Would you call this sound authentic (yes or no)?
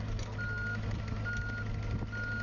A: yes